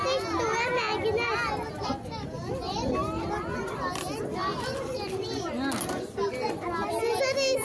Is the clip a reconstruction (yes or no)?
no